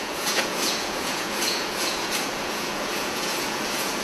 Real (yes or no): no